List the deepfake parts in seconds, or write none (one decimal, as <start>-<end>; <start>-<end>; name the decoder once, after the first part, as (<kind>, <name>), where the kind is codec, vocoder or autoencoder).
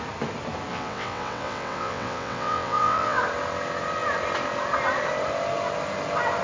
0.7-3.2 (vocoder, WaveNeXt)